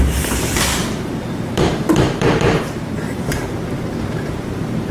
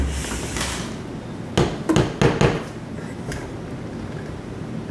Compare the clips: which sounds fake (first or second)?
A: first